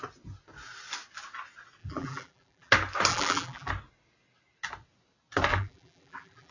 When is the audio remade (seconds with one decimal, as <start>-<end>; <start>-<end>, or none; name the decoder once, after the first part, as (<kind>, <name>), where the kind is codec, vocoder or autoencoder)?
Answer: 1.8-2.7 (vocoder, BigVGAN v2); 3.1-3.7; 5.5-6.5

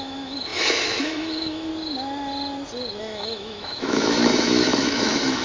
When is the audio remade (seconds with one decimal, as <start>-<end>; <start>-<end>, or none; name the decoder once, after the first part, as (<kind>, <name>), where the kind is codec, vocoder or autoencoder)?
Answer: 0.0-1.7 (autoencoder, DAC-VAE); 3.0-5.4

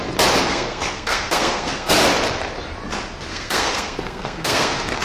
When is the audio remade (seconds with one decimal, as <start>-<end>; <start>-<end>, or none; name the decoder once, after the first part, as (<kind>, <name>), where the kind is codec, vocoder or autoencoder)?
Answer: 0.5-1.9 (codec, SNAC); 3.3-5.0

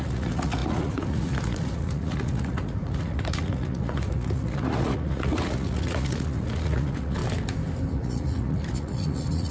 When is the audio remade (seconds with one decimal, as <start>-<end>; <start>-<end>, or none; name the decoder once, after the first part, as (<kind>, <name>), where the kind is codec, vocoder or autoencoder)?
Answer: 0.0-7.2 (vocoder, Vocos); 7.9-9.5